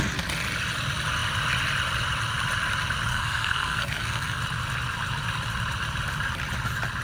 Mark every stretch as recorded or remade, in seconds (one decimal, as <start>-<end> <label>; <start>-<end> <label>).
0.0-3.1 recorded; 3.1-4.4 remade; 4.4-7.0 recorded